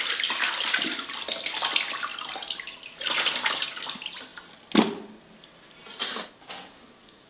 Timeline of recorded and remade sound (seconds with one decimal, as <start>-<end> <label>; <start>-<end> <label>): 0.0-7.3 recorded